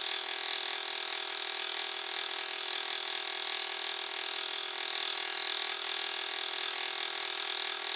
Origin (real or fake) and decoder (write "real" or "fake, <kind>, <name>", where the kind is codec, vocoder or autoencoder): real